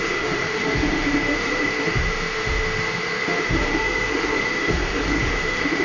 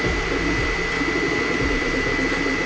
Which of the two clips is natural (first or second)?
second